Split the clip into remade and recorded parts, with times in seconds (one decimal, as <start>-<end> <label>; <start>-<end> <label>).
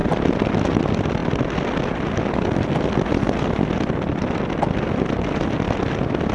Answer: 0.0-0.6 remade; 0.6-6.3 recorded